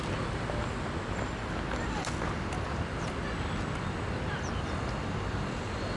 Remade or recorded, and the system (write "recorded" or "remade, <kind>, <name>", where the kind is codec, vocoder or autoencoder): recorded